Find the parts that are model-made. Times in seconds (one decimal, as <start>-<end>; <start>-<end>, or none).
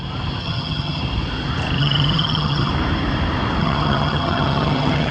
0.4-1.0; 1.8-2.7; 3.6-5.1